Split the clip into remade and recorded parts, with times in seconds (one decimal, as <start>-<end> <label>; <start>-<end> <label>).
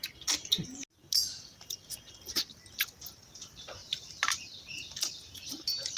0.0-6.0 recorded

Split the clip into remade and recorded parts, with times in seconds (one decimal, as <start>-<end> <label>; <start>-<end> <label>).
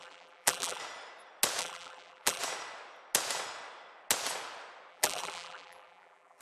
0.0-0.8 remade; 0.8-1.6 recorded; 1.6-2.4 remade; 2.4-4.9 recorded; 4.9-6.4 remade